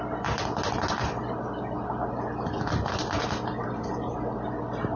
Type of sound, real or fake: real